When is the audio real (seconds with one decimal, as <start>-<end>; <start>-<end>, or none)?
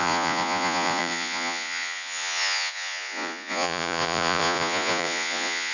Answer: none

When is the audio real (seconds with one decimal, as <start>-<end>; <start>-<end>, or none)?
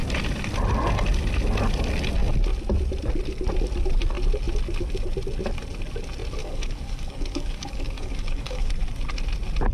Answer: 0.0-6.4; 8.7-9.7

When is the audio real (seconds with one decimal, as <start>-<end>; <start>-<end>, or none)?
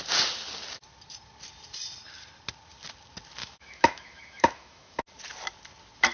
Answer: 0.0-3.4; 5.0-6.1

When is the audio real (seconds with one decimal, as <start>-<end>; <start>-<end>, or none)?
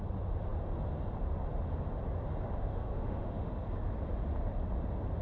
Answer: 0.0-2.7; 3.5-5.2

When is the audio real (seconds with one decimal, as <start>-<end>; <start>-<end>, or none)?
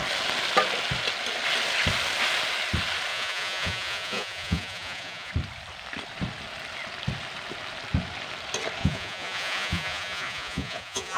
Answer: 0.0-3.1; 5.3-8.8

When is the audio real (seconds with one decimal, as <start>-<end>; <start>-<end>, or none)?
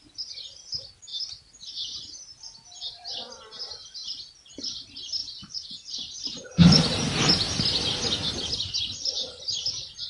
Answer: 0.0-5.2; 5.9-10.1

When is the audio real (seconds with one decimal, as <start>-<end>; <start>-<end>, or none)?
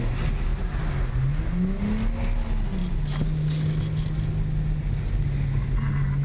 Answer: 0.0-6.2